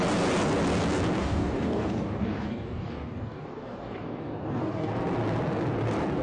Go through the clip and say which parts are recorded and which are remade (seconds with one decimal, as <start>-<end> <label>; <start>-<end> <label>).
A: 0.0-1.2 recorded; 1.2-4.9 remade; 4.9-6.2 recorded